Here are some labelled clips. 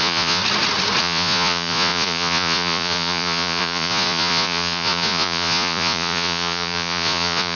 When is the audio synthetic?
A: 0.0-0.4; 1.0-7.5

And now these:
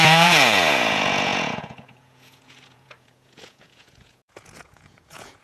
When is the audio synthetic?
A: 0.0-5.4

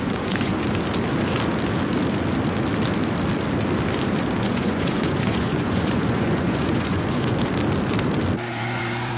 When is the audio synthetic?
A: 0.0-0.5; 4.4-7.4; 8.5-9.2